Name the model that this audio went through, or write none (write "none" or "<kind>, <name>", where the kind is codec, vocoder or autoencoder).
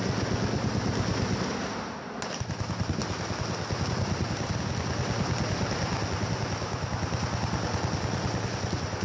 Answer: none